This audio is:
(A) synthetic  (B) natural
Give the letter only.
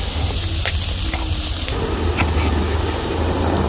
B